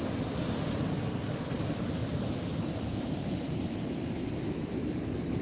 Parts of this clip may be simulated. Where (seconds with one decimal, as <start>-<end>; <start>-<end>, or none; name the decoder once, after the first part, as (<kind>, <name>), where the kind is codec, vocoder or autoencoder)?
0.9-1.6 (codec, SNAC)